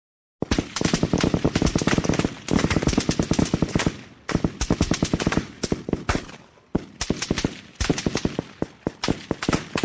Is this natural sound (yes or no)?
yes